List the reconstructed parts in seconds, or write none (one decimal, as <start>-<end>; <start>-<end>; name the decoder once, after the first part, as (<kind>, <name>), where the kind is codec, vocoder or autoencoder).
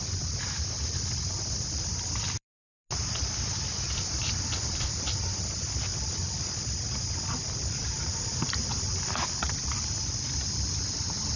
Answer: none